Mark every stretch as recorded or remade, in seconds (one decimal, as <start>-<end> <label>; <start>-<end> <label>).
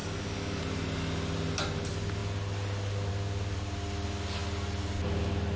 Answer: 0.0-0.6 remade; 0.6-5.6 recorded